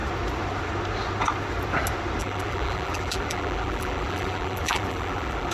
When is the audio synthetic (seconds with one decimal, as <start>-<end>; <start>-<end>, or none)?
2.2-5.5